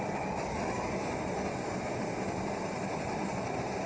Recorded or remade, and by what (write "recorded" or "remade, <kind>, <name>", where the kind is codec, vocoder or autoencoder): remade, vocoder, BigVGAN v2